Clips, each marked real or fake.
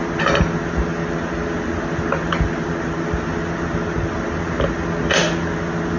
real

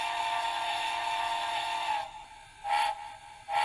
real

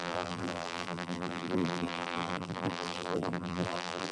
fake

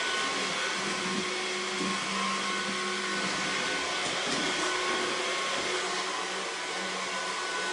real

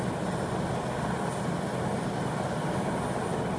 real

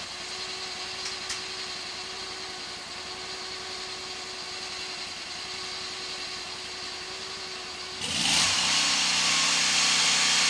real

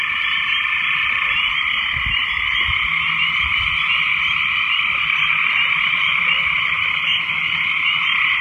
real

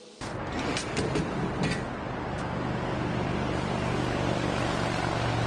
real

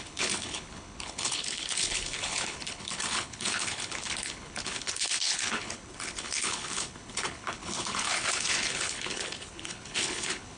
fake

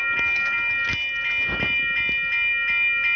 real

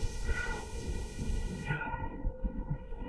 fake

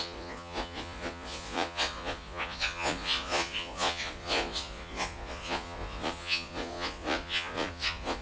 fake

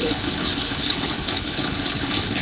fake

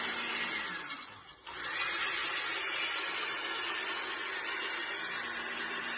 real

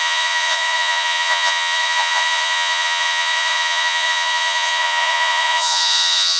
fake